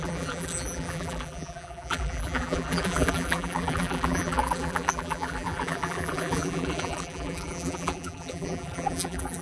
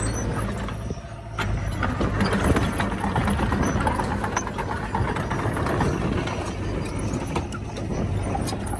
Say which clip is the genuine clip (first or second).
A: second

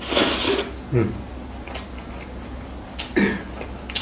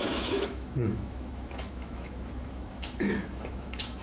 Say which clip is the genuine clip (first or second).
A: first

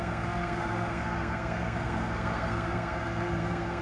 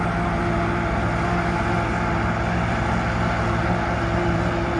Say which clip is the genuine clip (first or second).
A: second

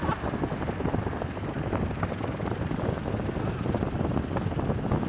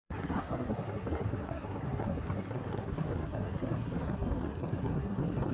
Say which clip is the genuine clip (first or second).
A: first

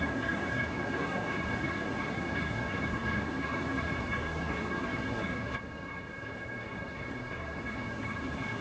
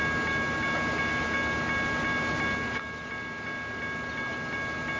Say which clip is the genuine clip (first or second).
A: second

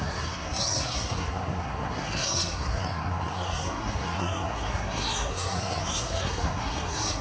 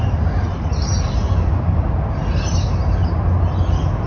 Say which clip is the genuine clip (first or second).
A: second